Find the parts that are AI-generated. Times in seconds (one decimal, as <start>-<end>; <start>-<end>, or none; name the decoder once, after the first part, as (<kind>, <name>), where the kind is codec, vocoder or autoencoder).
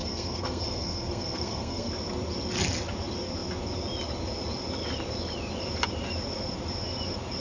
0.0-1.9 (codec, SNAC)